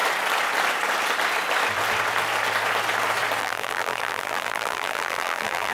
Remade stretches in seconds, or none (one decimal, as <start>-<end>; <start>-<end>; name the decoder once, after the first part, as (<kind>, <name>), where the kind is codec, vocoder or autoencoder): 3.4-5.7 (vocoder, BigVGAN v2)